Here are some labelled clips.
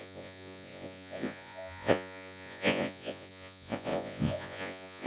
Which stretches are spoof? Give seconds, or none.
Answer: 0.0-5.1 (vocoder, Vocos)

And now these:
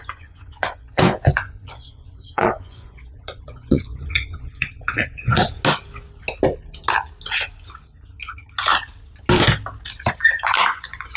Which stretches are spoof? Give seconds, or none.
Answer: 0.0-5.4 (vocoder, Vocos); 10.1-11.2

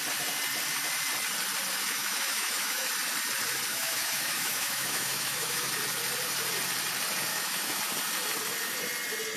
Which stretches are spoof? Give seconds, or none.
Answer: 2.0-2.9 (autoencoder, DAC-VAE); 3.7-5.7; 7.3-7.8

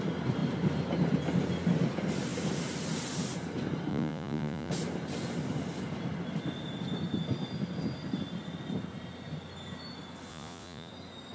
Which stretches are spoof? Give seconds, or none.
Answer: 3.9-4.7 (vocoder, Vocos); 10.3-10.9

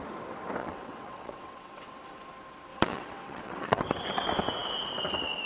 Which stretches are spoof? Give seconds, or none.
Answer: 0.6-2.0 (vocoder, WaveNeXt); 2.7-3.8

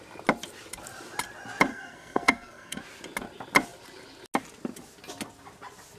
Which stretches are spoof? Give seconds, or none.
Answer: 1.7-2.8 (codec, SNAC)